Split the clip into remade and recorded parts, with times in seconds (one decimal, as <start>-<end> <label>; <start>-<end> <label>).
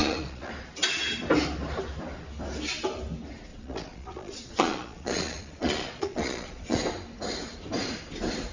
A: 0.0-0.5 remade; 0.5-3.5 recorded; 3.5-6.8 remade; 6.8-8.5 recorded